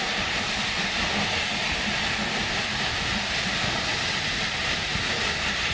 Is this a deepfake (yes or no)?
no